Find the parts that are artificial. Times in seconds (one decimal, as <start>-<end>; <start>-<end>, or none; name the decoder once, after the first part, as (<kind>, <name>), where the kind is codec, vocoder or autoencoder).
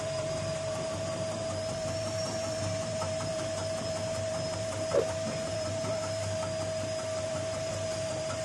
0.0-6.2 (vocoder, BigVGAN v2); 7.2-8.4